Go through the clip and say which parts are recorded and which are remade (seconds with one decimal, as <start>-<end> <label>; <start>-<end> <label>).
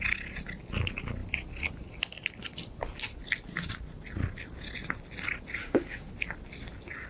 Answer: 0.0-5.6 recorded; 5.6-6.1 remade; 6.1-7.1 recorded